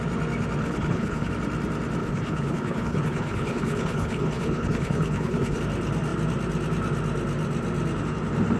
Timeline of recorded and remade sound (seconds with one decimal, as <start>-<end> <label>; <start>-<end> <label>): 0.0-0.6 recorded; 0.6-1.3 remade; 1.3-2.0 recorded; 2.0-5.6 remade; 5.6-8.6 recorded